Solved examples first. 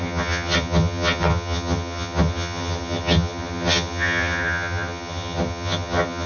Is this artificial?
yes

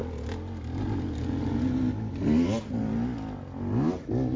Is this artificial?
no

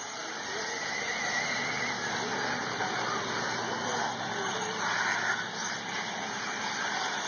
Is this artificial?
no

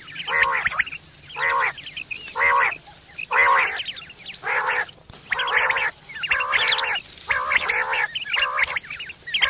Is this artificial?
no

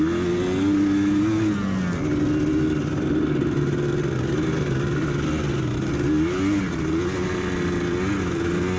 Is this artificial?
no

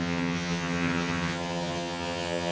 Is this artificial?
yes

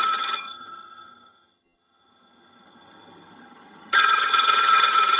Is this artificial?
yes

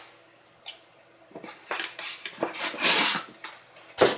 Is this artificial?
no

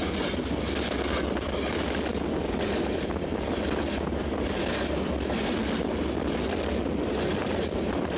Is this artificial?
no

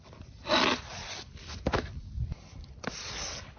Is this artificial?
no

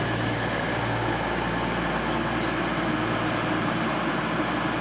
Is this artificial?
no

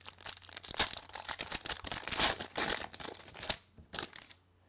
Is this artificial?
no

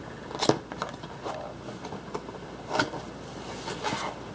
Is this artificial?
no